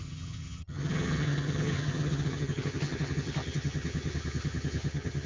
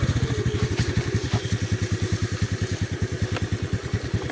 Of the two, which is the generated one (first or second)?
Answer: first